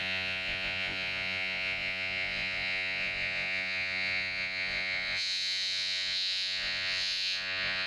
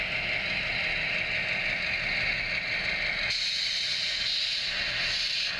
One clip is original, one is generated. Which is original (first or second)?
second